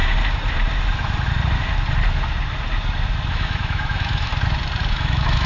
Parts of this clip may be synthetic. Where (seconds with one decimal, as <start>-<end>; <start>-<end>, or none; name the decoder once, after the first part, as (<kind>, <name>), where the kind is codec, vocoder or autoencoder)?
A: 3.3-4.3 (autoencoder, DAC-VAE); 4.9-5.5